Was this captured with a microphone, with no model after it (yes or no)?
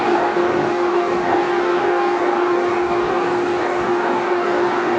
no